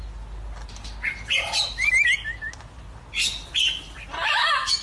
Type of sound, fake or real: real